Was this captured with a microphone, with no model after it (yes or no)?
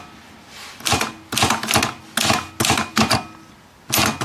yes